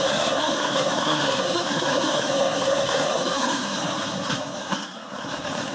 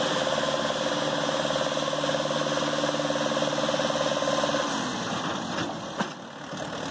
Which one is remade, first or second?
first